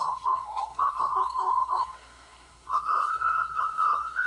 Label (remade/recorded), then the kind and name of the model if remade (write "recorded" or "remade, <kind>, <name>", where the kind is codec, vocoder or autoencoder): remade, codec, SNAC